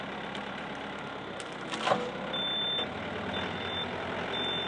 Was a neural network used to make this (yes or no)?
no